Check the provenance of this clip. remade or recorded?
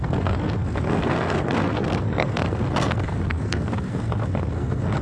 remade